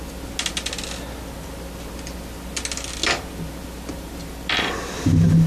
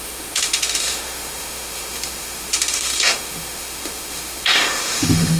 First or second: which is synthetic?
second